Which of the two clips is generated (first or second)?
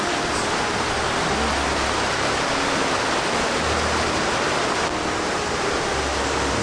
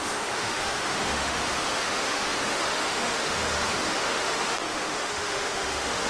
second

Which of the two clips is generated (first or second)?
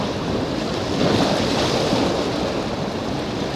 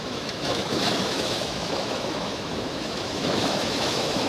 second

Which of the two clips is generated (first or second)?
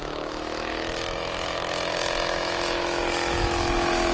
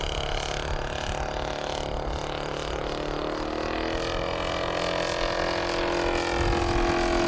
first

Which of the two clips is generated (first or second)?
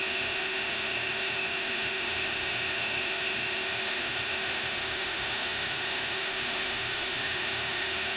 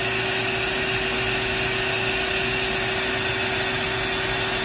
first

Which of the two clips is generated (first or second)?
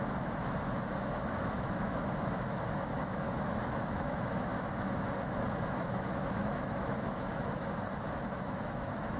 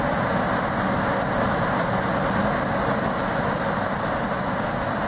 first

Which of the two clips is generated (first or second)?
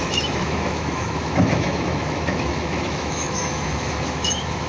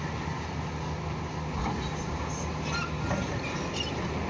first